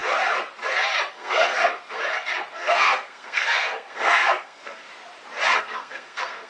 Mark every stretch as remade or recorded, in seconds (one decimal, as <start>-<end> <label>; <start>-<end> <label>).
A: 0.0-1.1 recorded; 1.1-2.0 remade; 2.0-2.5 recorded; 2.5-4.9 remade; 4.9-5.6 recorded; 5.6-6.5 remade